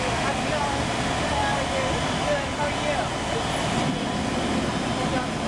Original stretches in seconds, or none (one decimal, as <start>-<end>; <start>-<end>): 0.0-5.5